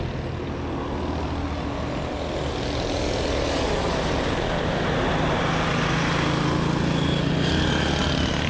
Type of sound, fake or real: real